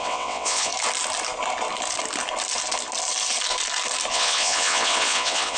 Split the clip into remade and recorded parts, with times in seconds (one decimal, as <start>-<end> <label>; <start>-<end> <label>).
0.0-0.7 remade; 0.7-4.1 recorded; 4.1-5.6 remade